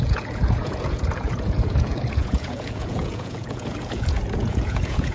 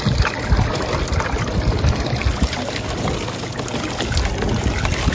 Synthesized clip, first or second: first